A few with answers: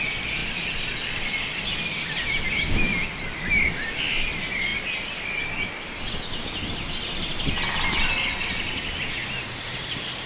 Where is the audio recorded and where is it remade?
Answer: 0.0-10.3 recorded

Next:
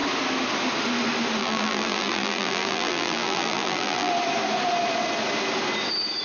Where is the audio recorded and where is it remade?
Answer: 0.0-1.4 recorded; 1.4-4.1 remade; 4.1-6.2 recorded

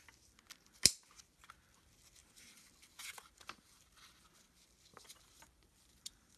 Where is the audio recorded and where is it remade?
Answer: 0.0-2.2 recorded; 2.2-2.7 remade; 2.7-3.2 recorded; 3.2-3.8 remade; 3.8-4.9 recorded; 4.9-6.4 remade

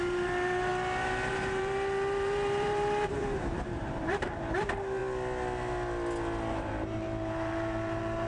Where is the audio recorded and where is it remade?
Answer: 0.0-0.7 remade; 0.7-1.3 recorded; 1.3-5.0 remade; 5.0-6.5 recorded; 6.5-8.3 remade

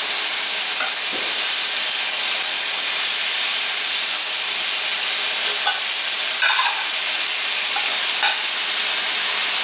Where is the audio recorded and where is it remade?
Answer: 0.0-1.1 recorded; 1.1-1.7 remade; 1.7-3.1 recorded; 3.1-3.9 remade; 3.9-9.6 recorded

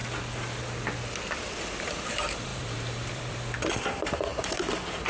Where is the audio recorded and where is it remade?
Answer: 0.0-2.0 recorded; 2.0-5.1 remade

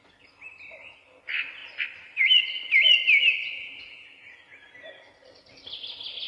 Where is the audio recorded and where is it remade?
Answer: 0.0-6.3 recorded